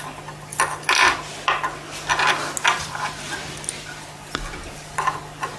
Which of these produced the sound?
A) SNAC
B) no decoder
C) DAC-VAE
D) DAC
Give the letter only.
B